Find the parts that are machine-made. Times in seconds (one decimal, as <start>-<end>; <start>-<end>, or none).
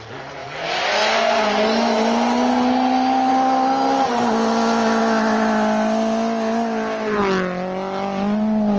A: none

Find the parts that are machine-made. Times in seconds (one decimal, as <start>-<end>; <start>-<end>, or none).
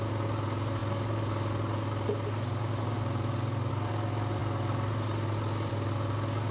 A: none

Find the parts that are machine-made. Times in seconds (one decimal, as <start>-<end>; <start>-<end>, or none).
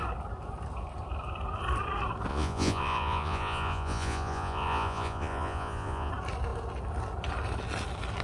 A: 2.3-6.1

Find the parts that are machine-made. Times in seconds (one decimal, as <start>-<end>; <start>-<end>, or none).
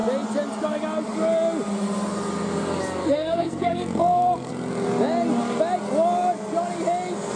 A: 3.0-4.5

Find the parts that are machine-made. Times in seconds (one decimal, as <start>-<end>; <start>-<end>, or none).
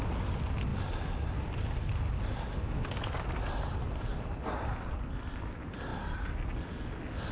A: none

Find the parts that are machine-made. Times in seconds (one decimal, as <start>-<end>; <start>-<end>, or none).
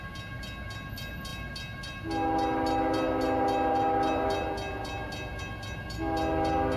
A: none